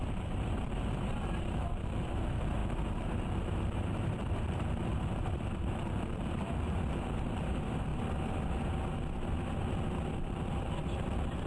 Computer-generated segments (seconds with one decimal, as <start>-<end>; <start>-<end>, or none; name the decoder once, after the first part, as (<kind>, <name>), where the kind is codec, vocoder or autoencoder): 0.0-7.9 (vocoder, BigVGAN v2); 10.2-11.5